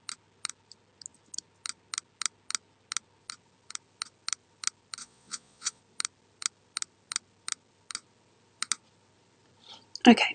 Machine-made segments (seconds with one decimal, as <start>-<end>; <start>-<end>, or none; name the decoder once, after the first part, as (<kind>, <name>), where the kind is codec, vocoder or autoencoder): 5.0-5.8 (vocoder, Vocos)